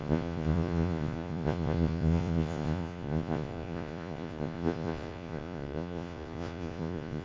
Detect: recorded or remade remade